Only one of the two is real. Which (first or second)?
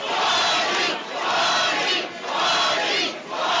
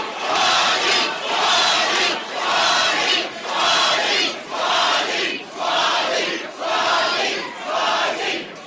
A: first